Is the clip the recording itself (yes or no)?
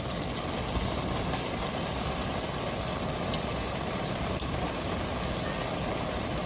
yes